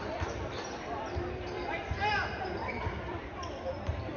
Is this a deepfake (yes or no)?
yes